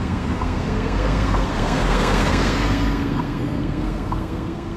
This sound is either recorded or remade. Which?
remade